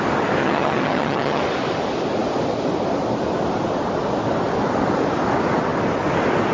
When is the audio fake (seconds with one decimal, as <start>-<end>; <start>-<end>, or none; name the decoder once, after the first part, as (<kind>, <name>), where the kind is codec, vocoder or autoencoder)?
0.4-1.4 (vocoder, HiFi-GAN)